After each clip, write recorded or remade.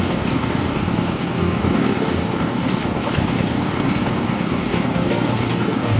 remade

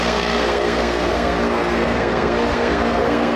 remade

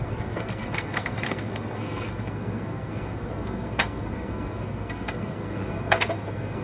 remade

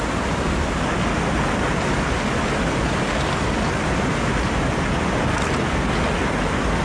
recorded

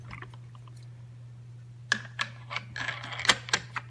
recorded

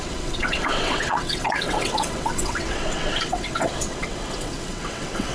remade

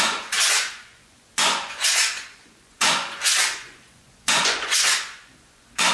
remade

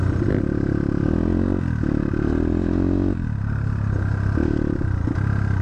recorded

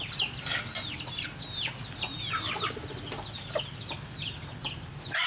recorded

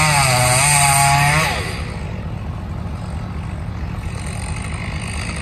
recorded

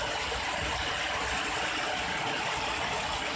recorded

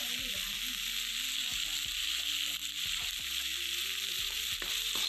recorded